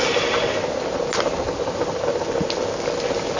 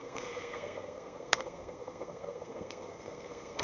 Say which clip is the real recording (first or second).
first